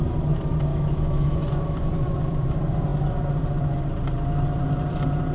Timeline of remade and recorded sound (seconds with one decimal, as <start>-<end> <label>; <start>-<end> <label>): 0.0-0.7 recorded; 0.7-1.4 remade; 1.4-5.3 recorded